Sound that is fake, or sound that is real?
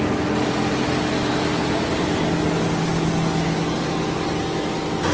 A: real